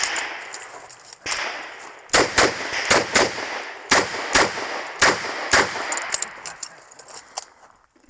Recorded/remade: remade